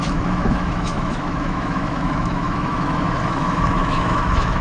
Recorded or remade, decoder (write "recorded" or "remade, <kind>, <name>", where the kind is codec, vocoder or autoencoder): remade, autoencoder, DAC-VAE